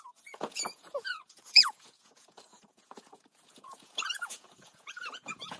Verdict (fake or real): fake